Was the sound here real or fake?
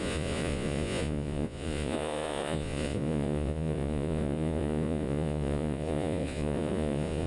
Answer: fake